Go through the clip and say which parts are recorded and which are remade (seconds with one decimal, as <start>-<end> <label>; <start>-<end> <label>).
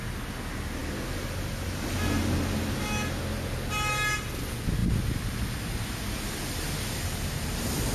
0.0-7.9 recorded